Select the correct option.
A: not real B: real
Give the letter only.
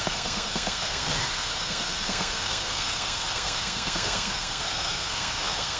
A